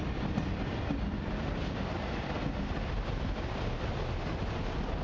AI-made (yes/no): no